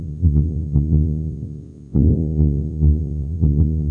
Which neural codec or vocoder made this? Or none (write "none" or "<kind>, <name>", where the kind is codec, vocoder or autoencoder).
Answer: vocoder, Vocos